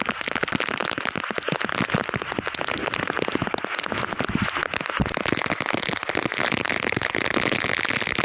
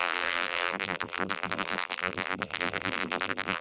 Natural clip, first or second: first